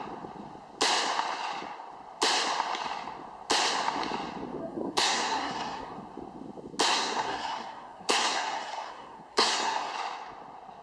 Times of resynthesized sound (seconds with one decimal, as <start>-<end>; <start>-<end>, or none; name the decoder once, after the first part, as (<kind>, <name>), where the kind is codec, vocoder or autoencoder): 4.6-6.0 (codec, SNAC); 6.9-9.9